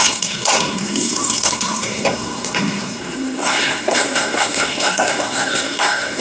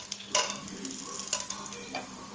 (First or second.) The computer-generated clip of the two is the first